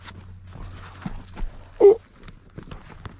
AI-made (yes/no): no